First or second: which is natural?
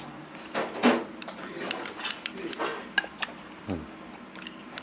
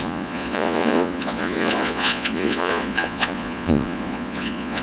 first